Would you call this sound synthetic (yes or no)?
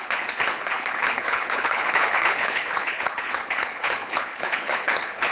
yes